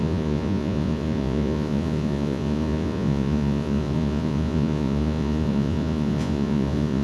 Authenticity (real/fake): fake